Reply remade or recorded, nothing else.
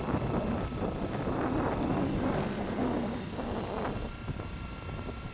recorded